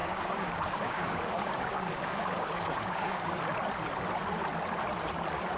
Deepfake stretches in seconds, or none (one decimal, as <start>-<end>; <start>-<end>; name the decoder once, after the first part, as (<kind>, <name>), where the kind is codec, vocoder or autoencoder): 0.0-3.4 (codec, DAC)

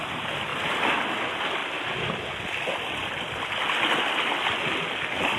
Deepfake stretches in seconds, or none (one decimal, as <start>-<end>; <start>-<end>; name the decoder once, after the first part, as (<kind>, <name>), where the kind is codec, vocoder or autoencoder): none

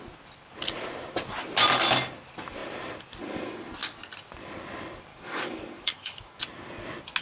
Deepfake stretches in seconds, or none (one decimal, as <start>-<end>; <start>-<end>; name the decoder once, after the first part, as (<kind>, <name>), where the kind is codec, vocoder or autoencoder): 5.1-6.4 (codec, DAC)

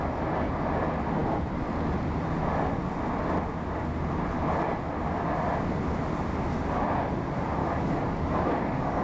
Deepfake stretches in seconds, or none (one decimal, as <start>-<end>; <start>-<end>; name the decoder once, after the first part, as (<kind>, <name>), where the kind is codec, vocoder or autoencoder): 7.6-9.0 (codec, DAC)

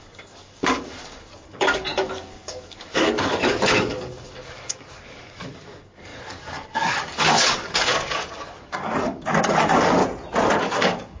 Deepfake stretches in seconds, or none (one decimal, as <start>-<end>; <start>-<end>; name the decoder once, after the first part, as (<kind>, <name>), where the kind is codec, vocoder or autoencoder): 0.0-10.0 (codec, DAC); 10.6-11.2

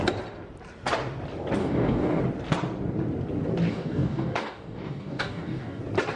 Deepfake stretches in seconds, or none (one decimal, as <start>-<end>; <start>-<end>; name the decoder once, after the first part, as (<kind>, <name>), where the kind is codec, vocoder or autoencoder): 1.6-2.2 (codec, DAC); 3.7-5.8

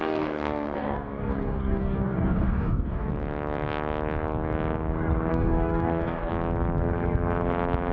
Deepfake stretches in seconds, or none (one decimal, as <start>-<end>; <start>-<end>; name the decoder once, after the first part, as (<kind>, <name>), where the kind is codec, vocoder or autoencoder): 0.0-3.1 (codec, DAC); 5.3-6.3

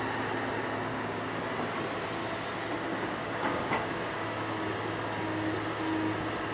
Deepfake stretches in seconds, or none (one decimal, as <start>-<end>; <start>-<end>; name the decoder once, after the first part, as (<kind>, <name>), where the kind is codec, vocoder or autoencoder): 0.9-1.4 (codec, DAC); 2.9-4.1